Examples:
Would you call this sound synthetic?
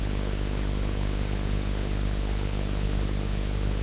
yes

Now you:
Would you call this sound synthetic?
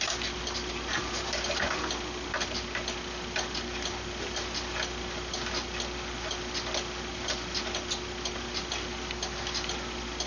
no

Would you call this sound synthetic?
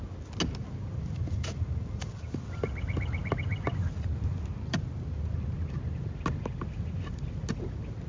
no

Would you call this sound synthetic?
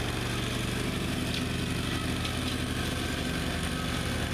no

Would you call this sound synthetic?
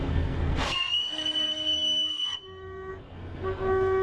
yes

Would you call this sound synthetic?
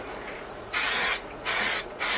yes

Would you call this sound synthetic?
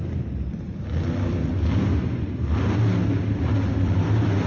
no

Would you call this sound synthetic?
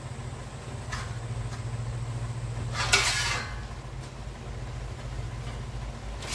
no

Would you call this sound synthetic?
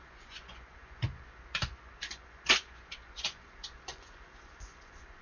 yes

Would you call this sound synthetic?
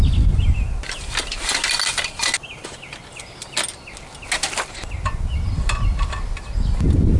no